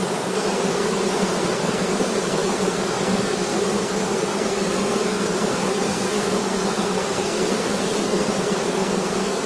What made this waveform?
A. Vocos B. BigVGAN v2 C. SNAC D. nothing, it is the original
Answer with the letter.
C